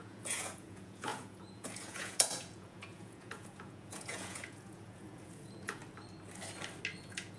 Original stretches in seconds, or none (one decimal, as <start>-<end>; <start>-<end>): 5.8-7.0